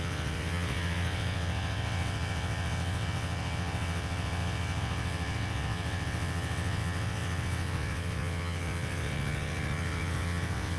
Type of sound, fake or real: fake